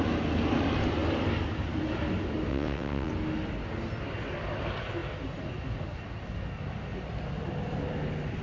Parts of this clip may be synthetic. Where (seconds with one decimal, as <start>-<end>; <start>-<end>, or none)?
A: 2.5-3.1